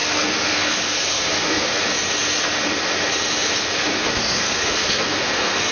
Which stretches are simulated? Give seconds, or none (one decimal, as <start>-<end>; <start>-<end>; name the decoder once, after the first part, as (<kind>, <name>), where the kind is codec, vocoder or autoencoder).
0.0-1.8 (codec, SNAC); 4.1-5.7